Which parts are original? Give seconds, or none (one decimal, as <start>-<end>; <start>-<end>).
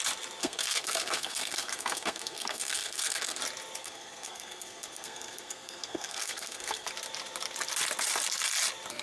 0.0-0.4; 3.4-3.8; 6.9-9.0